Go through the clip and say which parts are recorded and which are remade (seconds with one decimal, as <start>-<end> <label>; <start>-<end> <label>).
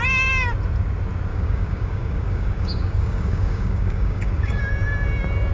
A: 0.0-1.3 recorded; 1.3-4.6 remade; 4.6-5.5 recorded